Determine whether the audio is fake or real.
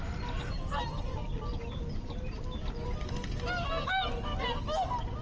real